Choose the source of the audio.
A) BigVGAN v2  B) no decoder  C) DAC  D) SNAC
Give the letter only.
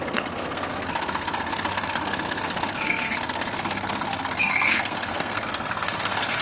D